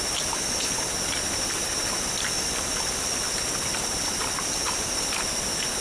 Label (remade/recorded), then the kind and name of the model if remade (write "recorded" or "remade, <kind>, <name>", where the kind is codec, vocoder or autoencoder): recorded